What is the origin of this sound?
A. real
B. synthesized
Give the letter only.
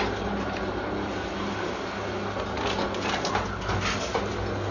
A